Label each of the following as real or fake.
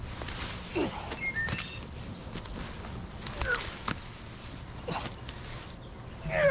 real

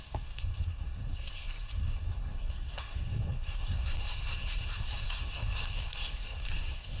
fake